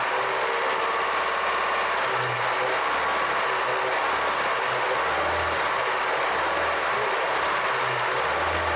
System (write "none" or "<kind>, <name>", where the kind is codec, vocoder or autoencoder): none